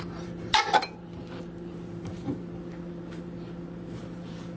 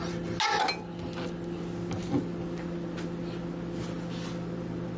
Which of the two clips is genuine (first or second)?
second